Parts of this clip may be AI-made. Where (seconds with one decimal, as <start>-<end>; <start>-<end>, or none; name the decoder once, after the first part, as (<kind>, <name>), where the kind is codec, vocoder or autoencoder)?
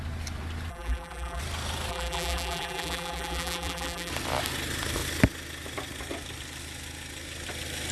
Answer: 0.7-1.4 (vocoder, BigVGAN v2); 1.9-4.1